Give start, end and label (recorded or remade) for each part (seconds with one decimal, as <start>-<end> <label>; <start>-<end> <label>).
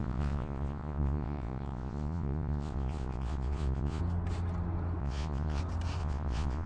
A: 0.0-4.0 remade; 4.0-5.0 recorded; 5.0-5.6 remade; 5.6-6.0 recorded; 6.0-6.7 remade